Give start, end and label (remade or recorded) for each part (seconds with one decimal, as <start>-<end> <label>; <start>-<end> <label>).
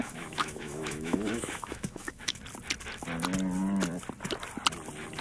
0.0-2.4 remade; 2.4-5.2 recorded